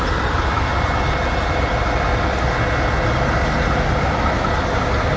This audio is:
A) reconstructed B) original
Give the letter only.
B